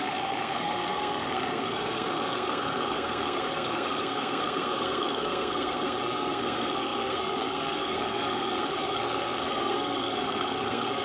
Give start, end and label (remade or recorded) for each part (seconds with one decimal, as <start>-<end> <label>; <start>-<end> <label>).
0.0-11.0 remade